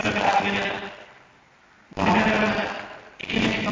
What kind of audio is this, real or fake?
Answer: real